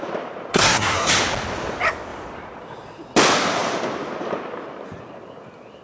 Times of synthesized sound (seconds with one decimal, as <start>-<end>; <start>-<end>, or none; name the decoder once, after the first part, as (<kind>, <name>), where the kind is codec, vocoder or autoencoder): 0.5-1.1 (codec, SNAC)